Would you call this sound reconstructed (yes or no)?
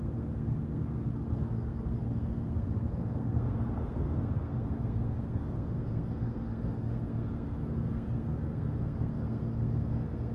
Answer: yes